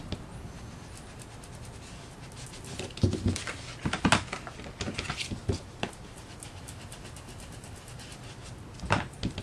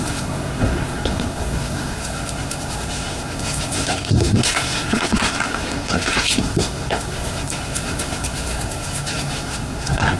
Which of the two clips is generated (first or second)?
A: second